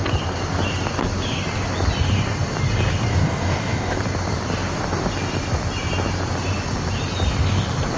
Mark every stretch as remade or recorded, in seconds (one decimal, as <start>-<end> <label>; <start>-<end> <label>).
0.0-3.1 recorded; 3.1-4.0 remade; 4.0-8.0 recorded